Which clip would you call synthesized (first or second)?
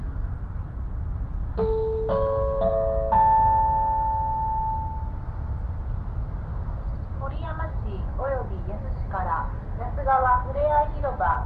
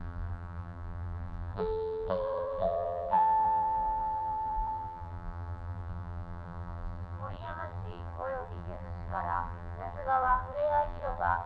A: second